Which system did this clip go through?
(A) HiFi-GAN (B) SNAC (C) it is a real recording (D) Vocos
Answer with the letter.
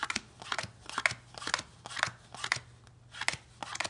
C